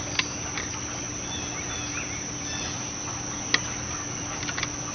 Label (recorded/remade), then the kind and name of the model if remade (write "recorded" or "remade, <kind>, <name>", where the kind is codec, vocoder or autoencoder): recorded